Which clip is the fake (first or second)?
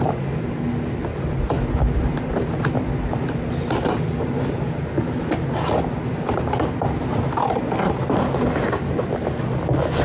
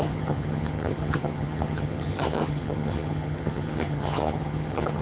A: second